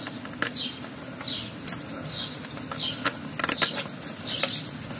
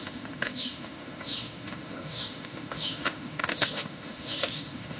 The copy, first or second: second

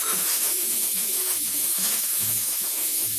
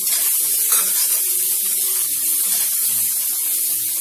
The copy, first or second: first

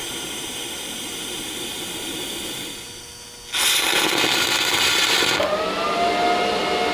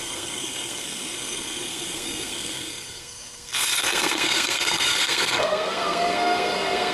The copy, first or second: second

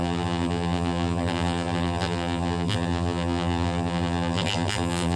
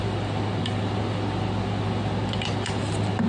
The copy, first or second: first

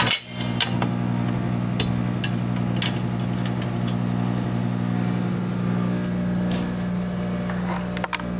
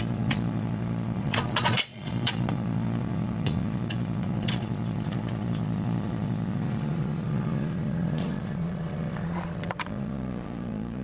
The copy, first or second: second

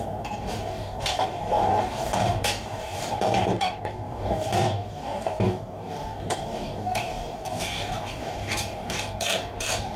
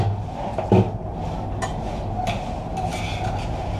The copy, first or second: first